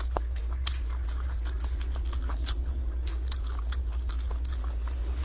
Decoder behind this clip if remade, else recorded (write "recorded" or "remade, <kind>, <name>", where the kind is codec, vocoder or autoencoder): recorded